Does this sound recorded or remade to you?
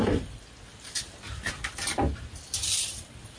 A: recorded